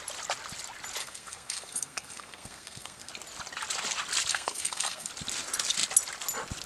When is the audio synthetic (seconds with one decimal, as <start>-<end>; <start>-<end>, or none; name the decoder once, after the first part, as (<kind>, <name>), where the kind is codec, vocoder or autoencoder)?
1.0-3.1 (codec, SNAC); 4.3-5.1

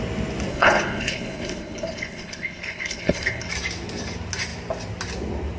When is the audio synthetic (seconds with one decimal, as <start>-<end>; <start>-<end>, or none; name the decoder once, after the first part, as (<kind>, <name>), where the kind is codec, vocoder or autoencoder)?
0.5-3.5 (codec, HILCodec)

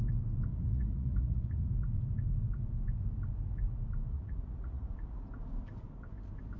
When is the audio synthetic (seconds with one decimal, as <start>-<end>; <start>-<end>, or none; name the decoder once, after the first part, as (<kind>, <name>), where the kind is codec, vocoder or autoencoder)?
0.5-1.7 (vocoder, Vocos); 4.1-5.3

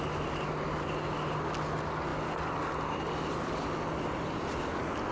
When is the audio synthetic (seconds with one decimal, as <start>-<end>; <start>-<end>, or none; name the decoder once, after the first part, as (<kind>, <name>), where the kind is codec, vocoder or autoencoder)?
none

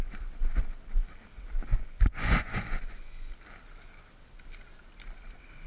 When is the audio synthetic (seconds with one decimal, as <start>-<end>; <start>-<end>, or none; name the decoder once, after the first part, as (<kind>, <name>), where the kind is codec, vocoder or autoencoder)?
1.7-3.3 (vocoder, Vocos)

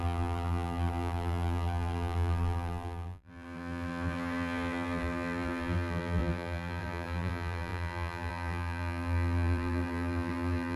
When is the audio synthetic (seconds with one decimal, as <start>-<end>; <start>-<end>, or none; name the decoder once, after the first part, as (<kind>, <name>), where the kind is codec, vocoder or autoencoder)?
0.0-10.8 (vocoder, BigVGAN v2)